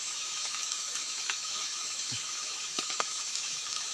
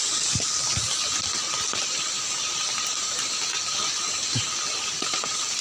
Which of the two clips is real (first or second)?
second